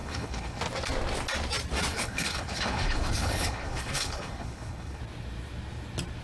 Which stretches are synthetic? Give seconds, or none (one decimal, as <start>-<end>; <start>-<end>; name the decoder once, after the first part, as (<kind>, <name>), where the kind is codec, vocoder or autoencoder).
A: 0.0-0.6 (codec, HILCodec); 1.9-5.0